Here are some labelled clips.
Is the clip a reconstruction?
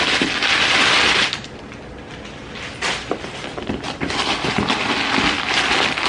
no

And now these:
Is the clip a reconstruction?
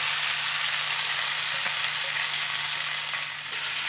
no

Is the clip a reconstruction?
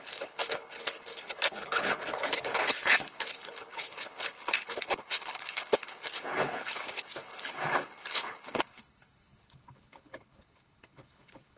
yes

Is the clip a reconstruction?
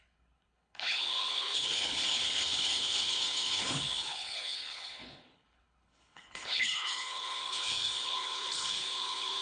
yes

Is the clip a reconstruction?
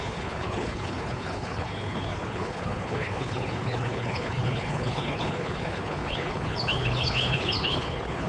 yes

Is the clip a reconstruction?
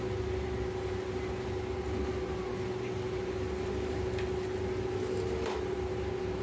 no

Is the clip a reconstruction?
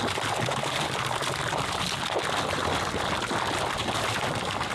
no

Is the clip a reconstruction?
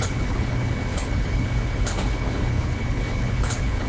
yes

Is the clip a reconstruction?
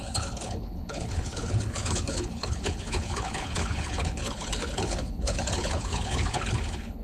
yes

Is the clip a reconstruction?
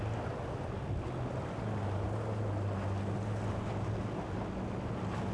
no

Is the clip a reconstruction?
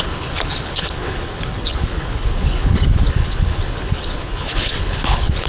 yes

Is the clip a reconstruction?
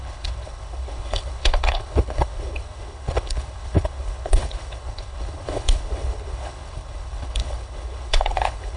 yes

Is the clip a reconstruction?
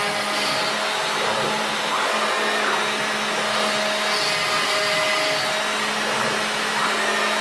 no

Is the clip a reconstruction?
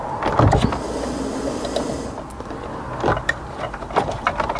no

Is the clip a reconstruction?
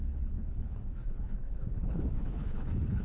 yes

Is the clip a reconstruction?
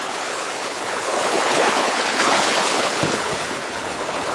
yes